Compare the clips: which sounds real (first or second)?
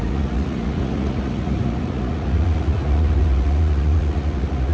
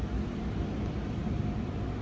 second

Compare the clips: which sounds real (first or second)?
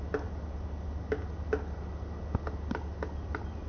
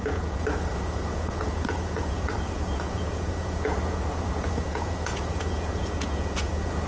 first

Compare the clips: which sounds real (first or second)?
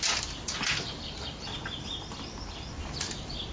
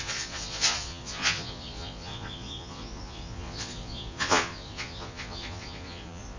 first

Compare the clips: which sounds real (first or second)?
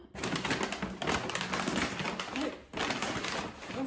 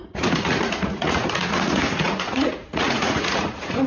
first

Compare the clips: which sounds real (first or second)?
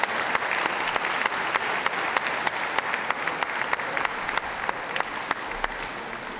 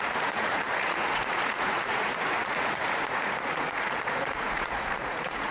first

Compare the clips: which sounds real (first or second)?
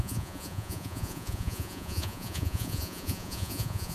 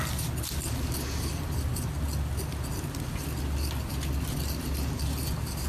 second